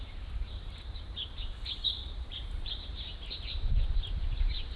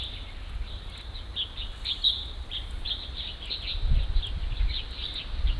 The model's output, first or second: first